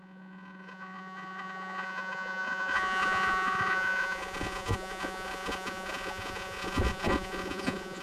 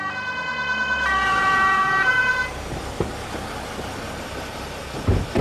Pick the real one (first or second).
second